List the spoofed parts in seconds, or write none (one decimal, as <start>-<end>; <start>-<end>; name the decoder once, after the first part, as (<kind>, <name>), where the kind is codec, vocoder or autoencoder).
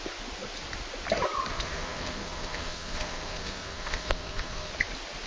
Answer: 1.5-4.7 (codec, SNAC)